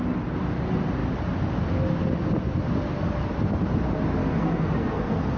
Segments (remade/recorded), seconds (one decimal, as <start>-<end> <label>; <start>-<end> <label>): 0.0-4.2 recorded; 4.2-5.4 remade